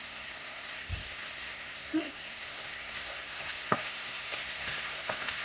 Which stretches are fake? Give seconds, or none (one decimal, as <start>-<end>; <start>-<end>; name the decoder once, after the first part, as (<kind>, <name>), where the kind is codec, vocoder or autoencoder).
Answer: 0.0-5.4 (codec, SNAC)